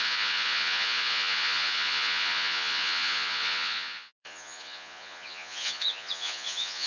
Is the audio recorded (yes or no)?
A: no